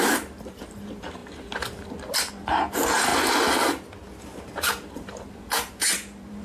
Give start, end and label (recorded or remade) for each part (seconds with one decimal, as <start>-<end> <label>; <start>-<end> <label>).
0.0-3.1 remade; 3.1-4.2 recorded; 4.2-6.4 remade